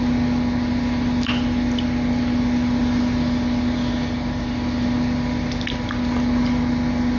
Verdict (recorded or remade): recorded